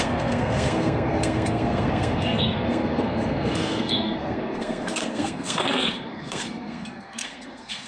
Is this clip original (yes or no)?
no